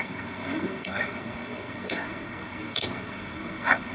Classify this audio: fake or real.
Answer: fake